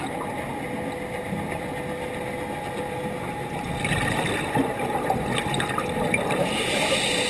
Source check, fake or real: real